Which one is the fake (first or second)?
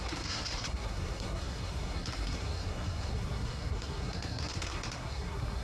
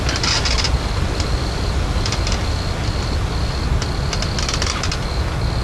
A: first